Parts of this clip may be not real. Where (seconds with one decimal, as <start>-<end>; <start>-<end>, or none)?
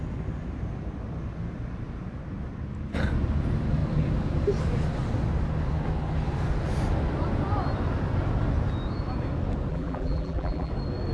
9.7-10.7